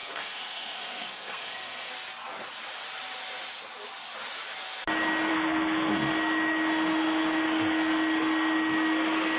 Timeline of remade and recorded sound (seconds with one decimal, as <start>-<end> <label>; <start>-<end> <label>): 0.0-1.9 remade; 1.9-5.3 recorded; 5.3-5.9 remade; 5.9-9.4 recorded